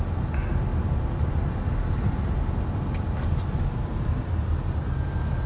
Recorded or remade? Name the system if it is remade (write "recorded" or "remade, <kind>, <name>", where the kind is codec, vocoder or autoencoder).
recorded